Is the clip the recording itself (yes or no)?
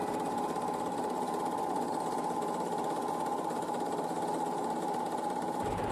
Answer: yes